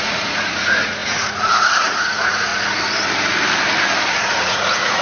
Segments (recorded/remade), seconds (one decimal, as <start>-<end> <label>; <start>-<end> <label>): 0.0-2.5 remade; 2.5-4.1 recorded; 4.1-5.0 remade